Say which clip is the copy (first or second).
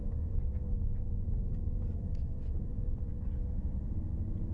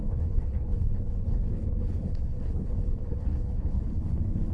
second